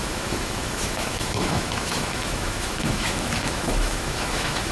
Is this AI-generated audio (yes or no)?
yes